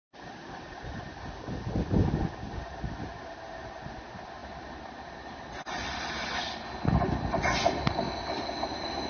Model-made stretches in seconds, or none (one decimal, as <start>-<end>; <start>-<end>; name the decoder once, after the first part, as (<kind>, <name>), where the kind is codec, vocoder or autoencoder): none